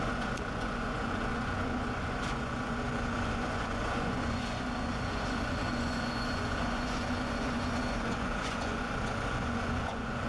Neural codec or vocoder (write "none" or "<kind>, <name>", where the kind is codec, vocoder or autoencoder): vocoder, Vocos